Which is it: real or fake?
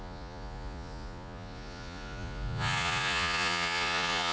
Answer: fake